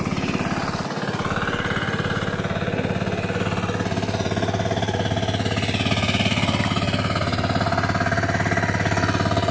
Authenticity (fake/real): real